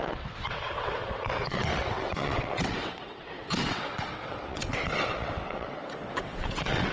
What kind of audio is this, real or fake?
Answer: fake